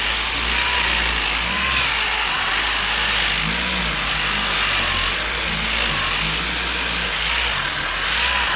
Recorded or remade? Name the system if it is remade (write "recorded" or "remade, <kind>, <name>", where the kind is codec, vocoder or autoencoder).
recorded